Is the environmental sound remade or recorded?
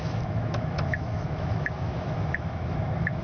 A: remade